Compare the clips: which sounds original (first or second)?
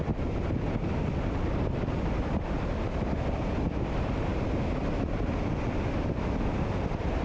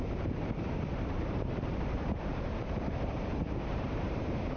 first